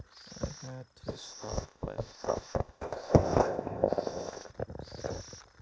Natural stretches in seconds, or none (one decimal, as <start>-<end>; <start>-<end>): 0.0-1.1; 4.5-5.6